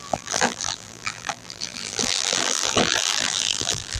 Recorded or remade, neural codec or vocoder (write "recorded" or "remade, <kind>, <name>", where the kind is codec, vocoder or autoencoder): remade, vocoder, BigVGAN v2